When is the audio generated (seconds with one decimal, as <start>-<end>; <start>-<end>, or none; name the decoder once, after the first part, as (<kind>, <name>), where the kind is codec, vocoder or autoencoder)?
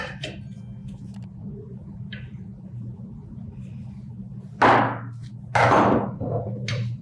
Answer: 0.0-0.8 (vocoder, BigVGAN v2); 1.4-2.5; 6.4-7.0